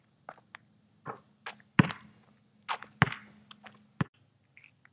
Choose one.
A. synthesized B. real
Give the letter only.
B